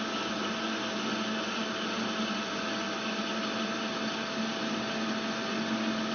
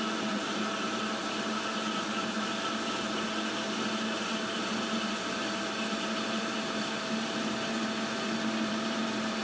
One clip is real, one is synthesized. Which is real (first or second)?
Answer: first